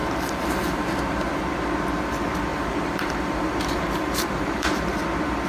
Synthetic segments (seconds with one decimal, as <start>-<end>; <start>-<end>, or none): 0.0-1.4; 2.5-5.0